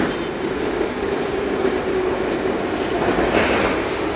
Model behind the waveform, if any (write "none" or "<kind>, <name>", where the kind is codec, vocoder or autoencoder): none